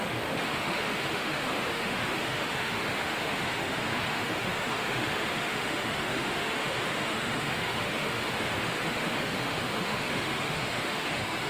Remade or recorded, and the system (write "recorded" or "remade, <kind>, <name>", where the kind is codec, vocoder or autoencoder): remade, autoencoder, DAC-VAE